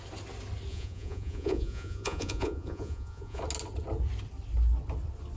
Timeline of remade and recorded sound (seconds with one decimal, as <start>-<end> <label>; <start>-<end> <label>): 0.0-0.7 recorded; 0.7-3.4 remade; 3.4-5.4 recorded